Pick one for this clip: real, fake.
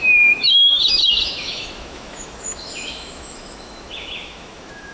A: fake